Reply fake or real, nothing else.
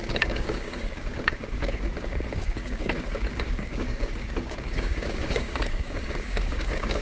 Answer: fake